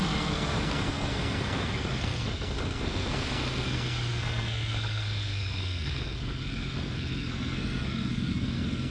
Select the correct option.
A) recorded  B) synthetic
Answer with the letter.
B